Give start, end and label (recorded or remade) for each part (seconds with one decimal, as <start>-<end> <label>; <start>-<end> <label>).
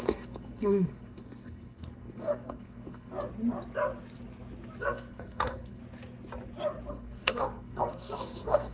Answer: 0.0-3.1 remade; 3.1-4.8 recorded; 4.8-5.8 remade; 5.8-6.9 recorded; 6.9-8.7 remade